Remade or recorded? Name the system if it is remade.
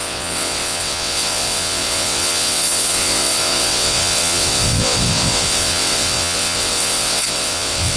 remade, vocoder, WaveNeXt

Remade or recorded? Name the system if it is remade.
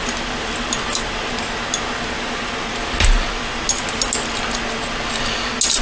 recorded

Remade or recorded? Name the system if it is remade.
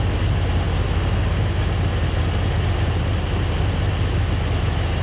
recorded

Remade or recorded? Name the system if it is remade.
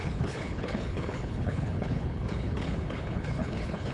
remade, codec, HILCodec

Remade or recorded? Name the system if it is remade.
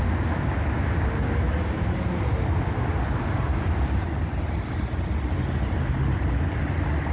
recorded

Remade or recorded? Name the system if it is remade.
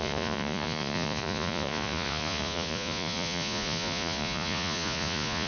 remade, vocoder, Vocos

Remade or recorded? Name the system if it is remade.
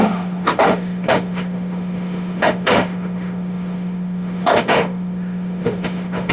remade, autoencoder, DAC-VAE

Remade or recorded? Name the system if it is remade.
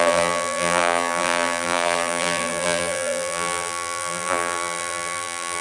remade, vocoder, BigVGAN v2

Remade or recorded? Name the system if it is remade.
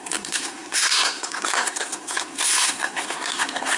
remade, codec, SNAC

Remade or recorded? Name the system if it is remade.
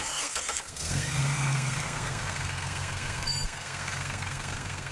remade, codec, SNAC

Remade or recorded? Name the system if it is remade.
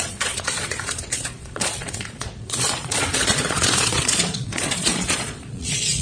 remade, vocoder, Vocos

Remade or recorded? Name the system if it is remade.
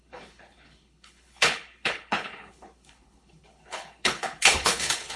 remade, codec, HILCodec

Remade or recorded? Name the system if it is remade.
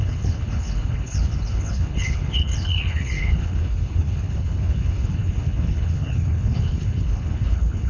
remade, codec, HILCodec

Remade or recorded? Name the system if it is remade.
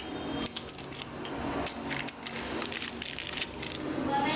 recorded